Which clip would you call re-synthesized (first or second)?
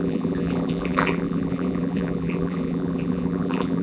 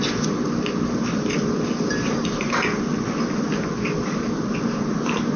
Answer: first